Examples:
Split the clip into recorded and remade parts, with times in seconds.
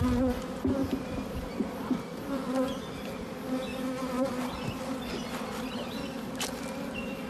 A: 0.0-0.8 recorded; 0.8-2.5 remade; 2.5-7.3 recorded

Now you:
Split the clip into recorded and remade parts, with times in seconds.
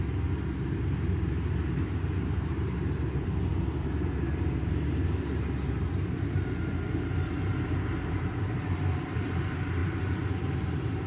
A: 0.0-9.8 remade; 9.8-10.4 recorded; 10.4-11.1 remade